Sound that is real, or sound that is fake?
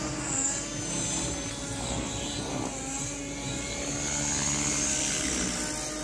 real